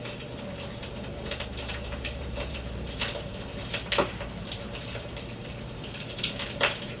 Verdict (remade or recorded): remade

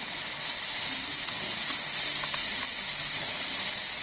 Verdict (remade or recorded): recorded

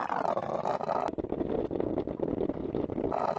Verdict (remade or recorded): recorded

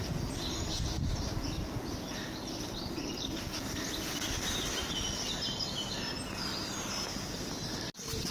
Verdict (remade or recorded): recorded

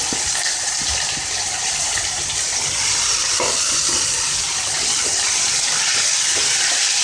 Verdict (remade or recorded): recorded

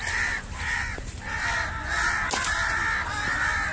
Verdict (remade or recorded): recorded